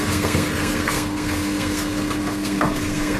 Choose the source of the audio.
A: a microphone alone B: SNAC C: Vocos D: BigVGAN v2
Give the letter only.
B